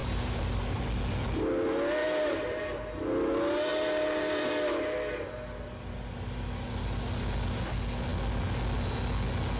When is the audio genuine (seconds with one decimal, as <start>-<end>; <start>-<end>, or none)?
0.8-2.0; 2.6-3.7; 4.5-9.6